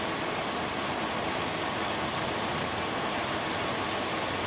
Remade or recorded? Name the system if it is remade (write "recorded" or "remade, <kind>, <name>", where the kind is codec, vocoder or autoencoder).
recorded